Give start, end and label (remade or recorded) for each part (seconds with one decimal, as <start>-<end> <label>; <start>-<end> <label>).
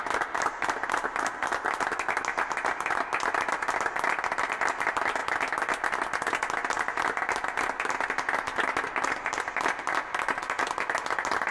0.0-11.5 recorded